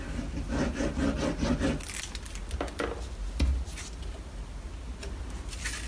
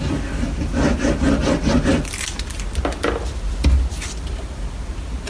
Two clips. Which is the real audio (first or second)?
first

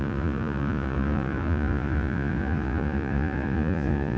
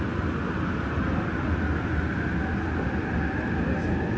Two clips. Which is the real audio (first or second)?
second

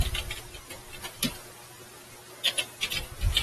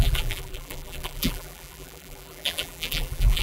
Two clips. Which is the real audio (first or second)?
first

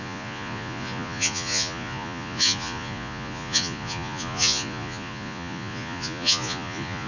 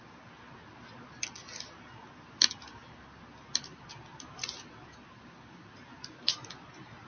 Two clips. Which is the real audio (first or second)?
second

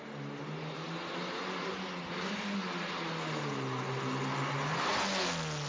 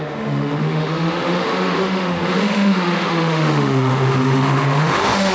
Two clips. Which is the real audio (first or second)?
first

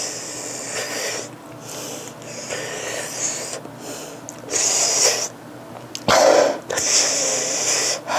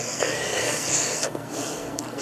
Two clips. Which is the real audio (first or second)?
first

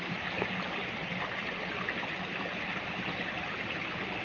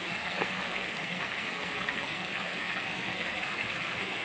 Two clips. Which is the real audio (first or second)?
first